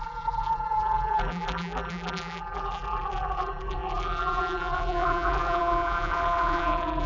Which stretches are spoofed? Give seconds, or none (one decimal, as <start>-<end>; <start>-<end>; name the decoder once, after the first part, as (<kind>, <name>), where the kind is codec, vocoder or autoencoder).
0.0-7.1 (vocoder, BigVGAN v2)

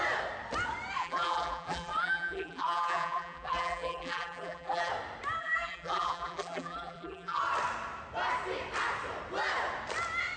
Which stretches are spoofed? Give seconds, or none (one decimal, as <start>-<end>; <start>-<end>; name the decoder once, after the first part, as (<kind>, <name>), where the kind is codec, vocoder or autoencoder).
1.0-4.9 (vocoder, BigVGAN v2); 5.4-7.4

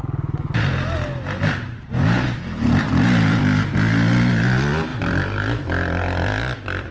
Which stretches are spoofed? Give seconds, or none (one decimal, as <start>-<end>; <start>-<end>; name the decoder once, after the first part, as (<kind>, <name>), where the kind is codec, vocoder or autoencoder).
4.9-5.4 (vocoder, BigVGAN v2)

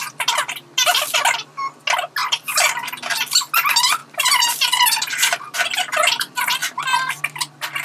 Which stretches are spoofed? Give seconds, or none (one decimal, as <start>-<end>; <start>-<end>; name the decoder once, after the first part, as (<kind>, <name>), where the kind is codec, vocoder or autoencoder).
2.2-2.7 (vocoder, BigVGAN v2); 4.0-4.6; 6.6-7.2